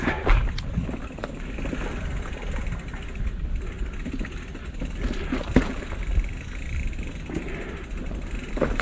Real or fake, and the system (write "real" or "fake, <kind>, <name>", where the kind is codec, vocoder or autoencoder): real